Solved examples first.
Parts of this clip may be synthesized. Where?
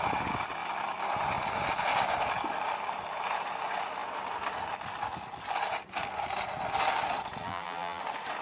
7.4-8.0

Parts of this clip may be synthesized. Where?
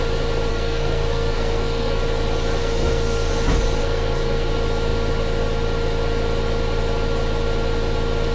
0.5-2.0; 2.6-3.3; 3.8-4.5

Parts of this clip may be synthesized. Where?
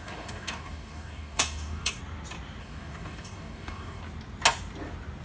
0.0-2.0; 2.6-4.0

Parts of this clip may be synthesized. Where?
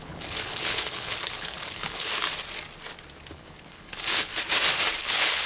0.0-2.1; 3.3-4.3; 5.0-5.5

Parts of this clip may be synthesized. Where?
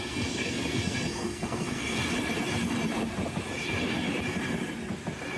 0.0-2.0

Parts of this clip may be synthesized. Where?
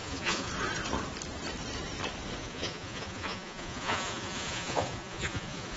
0.0-0.5; 2.4-5.8